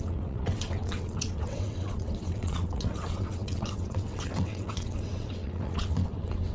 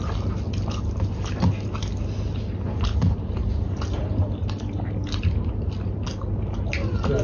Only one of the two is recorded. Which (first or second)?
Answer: second